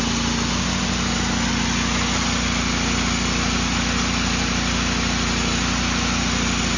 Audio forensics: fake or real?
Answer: real